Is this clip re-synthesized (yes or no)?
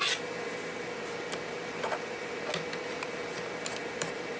no